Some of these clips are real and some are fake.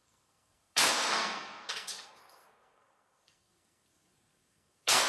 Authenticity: fake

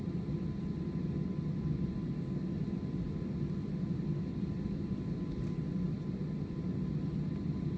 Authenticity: real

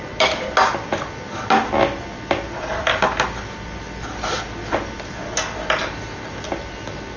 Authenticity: real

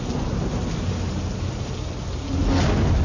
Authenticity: real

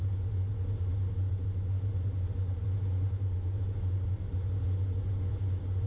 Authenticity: real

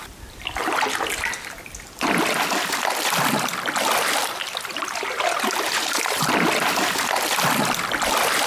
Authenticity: real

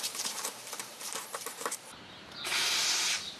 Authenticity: fake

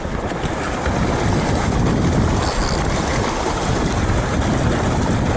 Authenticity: real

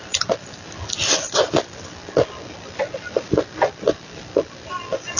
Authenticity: real